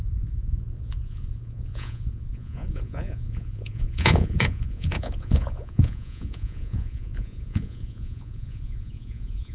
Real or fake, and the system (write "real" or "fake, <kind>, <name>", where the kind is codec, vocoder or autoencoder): fake, vocoder, Vocos